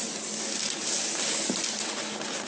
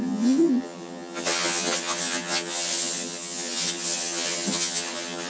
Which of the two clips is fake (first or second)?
second